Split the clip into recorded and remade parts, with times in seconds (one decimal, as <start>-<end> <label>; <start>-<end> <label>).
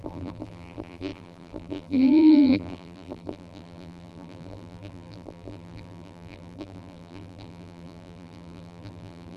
0.0-9.4 remade